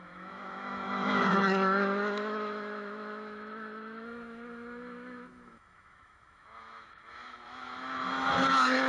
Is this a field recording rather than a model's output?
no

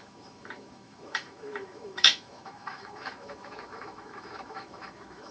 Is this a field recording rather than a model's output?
no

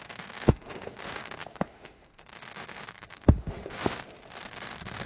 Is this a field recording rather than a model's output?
no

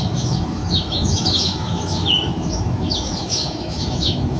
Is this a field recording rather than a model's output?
no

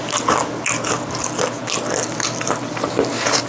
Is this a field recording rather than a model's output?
yes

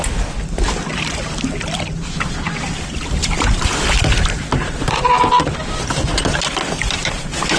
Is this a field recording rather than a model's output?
yes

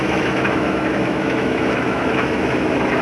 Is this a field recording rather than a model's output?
no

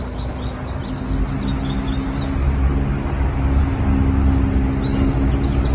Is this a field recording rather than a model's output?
yes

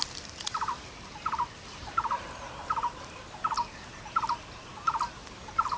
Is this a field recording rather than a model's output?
yes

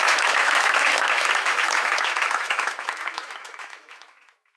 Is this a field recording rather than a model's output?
no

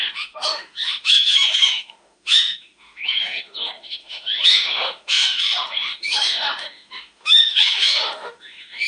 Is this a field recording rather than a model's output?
no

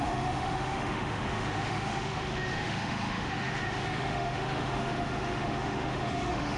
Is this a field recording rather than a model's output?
no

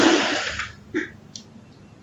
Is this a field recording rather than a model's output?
yes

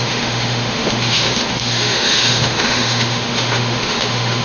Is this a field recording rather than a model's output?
no